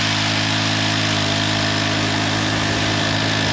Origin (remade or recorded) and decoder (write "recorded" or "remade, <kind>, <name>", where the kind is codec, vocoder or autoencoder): recorded